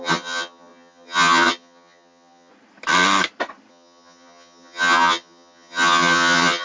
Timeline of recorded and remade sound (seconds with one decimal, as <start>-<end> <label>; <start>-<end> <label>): 0.0-2.5 remade; 2.5-3.7 recorded; 3.7-6.6 remade